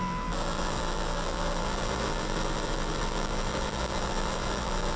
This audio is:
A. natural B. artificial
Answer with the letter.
B